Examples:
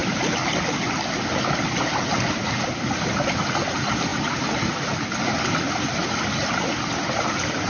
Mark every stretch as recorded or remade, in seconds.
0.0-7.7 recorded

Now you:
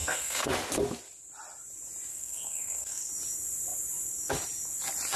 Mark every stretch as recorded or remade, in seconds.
0.0-0.5 remade; 0.5-2.1 recorded; 2.1-3.1 remade; 3.1-5.2 recorded

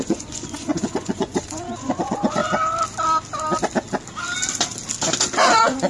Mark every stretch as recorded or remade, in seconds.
0.0-2.4 remade; 2.4-5.5 recorded; 5.5-5.9 remade

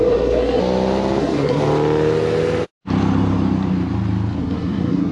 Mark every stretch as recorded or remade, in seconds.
0.0-0.6 remade; 0.6-1.2 recorded; 1.2-1.6 remade; 1.6-4.4 recorded; 4.4-5.1 remade

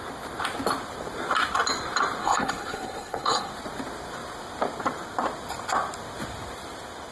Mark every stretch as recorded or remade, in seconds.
0.0-2.2 recorded; 2.2-3.5 remade; 3.5-7.1 recorded

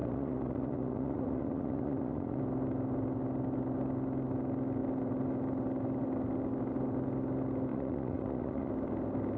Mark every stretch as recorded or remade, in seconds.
0.0-2.4 remade; 2.4-7.7 recorded; 7.7-8.7 remade; 8.7-9.4 recorded

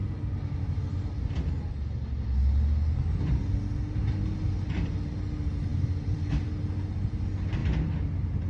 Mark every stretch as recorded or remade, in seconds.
0.0-5.7 recorded; 5.7-6.5 remade; 6.5-8.5 recorded